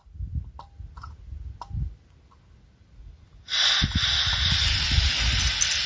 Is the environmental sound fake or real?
real